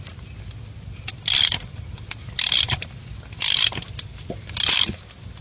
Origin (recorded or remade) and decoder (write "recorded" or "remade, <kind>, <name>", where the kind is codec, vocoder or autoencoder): recorded